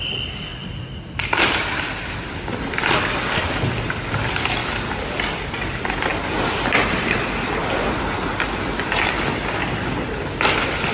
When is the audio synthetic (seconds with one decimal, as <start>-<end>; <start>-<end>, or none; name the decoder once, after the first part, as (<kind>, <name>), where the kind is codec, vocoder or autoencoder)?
0.0-4.6 (vocoder, BigVGAN v2); 5.4-6.1; 7.6-10.9